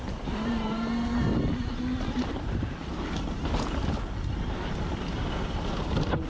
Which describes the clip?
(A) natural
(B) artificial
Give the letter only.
A